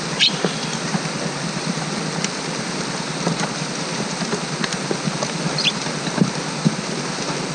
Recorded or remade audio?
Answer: recorded